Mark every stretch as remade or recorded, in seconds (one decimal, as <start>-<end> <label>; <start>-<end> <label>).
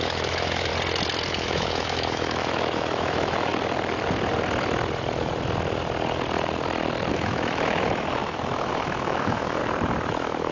0.0-0.7 remade; 0.7-1.3 recorded; 1.3-3.5 remade; 3.5-7.1 recorded; 7.1-9.6 remade; 9.6-10.1 recorded; 10.1-10.5 remade